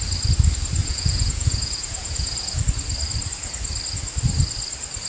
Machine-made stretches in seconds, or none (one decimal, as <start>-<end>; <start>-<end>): 0.8-2.6